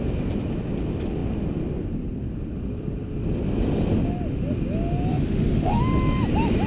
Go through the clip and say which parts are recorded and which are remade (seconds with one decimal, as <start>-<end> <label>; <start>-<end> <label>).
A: 0.0-5.1 recorded; 5.1-5.8 remade; 5.8-6.7 recorded